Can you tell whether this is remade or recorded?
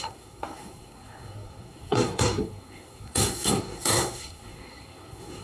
remade